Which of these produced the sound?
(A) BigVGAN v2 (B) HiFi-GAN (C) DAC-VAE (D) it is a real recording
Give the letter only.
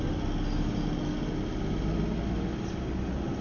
D